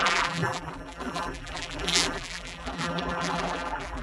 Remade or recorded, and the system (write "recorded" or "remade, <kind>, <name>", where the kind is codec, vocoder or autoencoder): remade, vocoder, BigVGAN v2